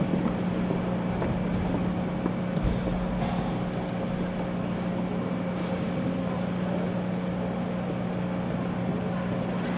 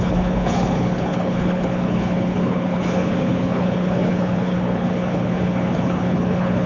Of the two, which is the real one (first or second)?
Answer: first